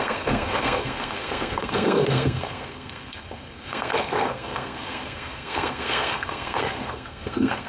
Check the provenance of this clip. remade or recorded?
remade